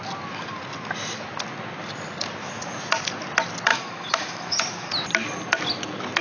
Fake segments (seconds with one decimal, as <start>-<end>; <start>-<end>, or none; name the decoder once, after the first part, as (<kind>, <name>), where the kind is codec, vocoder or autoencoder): 3.7-4.9 (autoencoder, DAC-VAE)